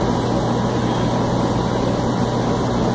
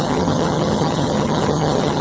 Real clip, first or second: first